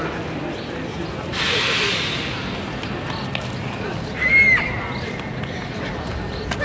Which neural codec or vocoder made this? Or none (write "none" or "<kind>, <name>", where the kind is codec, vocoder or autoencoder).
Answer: none